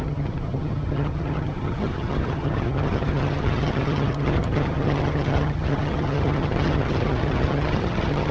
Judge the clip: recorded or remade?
remade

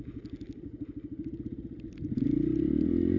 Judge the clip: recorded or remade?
recorded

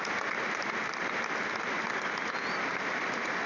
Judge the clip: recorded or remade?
recorded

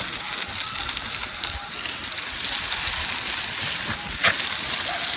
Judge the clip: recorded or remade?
recorded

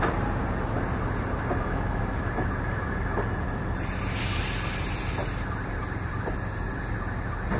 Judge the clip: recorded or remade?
recorded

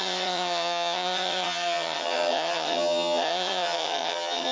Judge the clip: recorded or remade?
remade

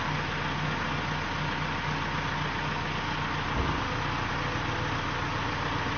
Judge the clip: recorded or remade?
recorded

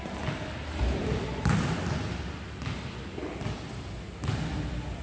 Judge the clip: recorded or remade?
recorded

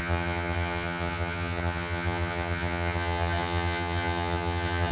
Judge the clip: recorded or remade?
remade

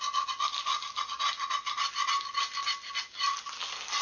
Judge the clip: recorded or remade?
recorded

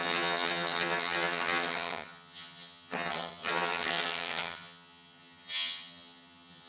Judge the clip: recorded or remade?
remade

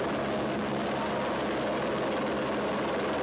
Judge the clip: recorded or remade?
recorded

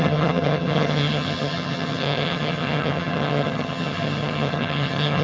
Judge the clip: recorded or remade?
remade